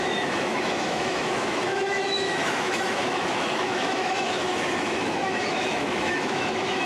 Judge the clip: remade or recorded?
remade